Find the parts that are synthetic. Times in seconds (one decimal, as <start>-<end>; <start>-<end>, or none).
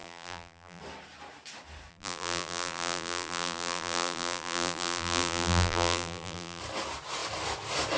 0.0-0.8; 1.9-6.6